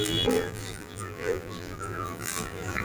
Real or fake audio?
fake